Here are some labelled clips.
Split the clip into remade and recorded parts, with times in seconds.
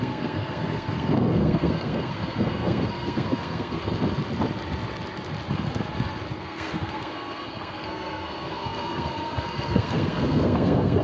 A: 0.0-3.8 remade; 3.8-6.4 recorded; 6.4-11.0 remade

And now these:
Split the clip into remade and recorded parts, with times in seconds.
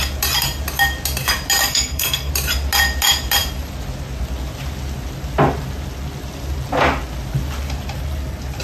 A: 0.0-1.6 recorded; 1.6-2.3 remade; 2.3-8.6 recorded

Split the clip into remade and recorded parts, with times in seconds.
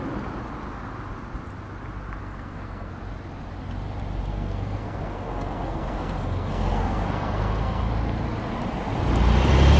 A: 0.0-2.2 recorded; 2.2-2.9 remade; 2.9-4.3 recorded; 4.3-7.9 remade; 7.9-9.8 recorded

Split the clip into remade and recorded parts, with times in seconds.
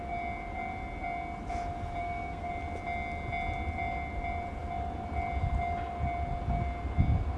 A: 0.0-2.0 recorded; 2.0-2.5 remade; 2.5-7.4 recorded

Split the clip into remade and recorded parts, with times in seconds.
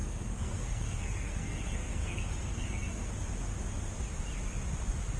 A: 0.0-3.1 remade; 3.1-5.2 recorded